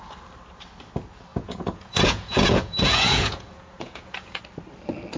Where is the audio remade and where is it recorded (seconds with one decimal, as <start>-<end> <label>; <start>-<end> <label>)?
0.0-1.3 recorded; 1.3-4.4 remade; 4.4-5.2 recorded

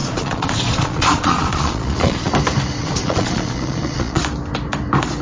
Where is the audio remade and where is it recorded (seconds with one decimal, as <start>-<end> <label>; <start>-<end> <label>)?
0.0-2.3 remade; 2.3-2.8 recorded; 2.8-4.2 remade; 4.2-5.2 recorded

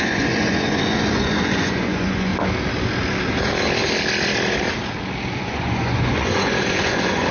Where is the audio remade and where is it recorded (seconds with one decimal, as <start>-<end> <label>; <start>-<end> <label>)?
0.0-2.3 remade; 2.3-5.4 recorded; 5.4-7.3 remade

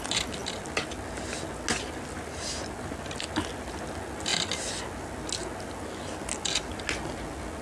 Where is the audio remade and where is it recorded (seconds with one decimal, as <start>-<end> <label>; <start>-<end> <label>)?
0.0-7.6 recorded

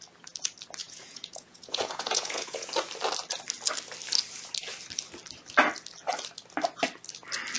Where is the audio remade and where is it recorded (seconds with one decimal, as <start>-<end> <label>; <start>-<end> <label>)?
0.0-0.8 recorded; 0.8-2.7 remade; 2.7-7.6 recorded

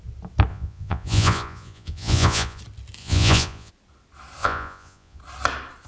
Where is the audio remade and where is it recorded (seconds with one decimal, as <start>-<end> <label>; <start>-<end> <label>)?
0.0-0.5 recorded; 0.5-2.6 remade; 2.6-3.0 recorded; 3.0-3.7 remade; 3.7-4.4 recorded; 4.4-5.2 remade; 5.2-5.9 recorded

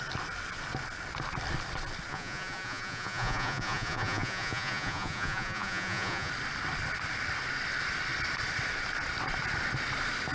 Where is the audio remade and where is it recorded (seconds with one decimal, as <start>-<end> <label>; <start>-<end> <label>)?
0.0-2.1 recorded; 2.1-6.3 remade; 6.3-10.3 recorded